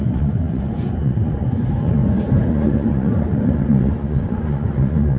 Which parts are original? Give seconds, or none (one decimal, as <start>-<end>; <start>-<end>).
2.0-2.5